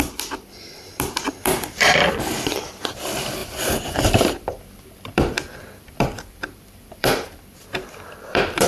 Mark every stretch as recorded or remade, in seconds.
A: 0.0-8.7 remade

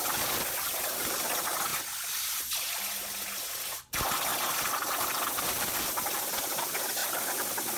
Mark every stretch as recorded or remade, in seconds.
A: 0.0-7.0 recorded; 7.0-7.8 remade